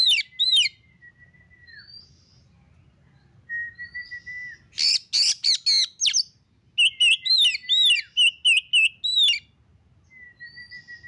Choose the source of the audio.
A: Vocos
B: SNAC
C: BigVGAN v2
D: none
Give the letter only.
D